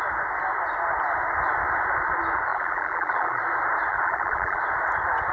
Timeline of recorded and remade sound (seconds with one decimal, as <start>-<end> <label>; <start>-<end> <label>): 0.0-2.5 recorded; 2.5-3.4 remade; 3.4-3.9 recorded; 3.9-4.6 remade; 4.6-5.3 recorded